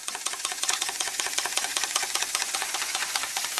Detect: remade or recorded remade